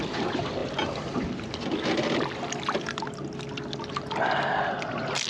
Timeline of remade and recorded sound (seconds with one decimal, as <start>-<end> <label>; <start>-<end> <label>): 0.0-5.3 recorded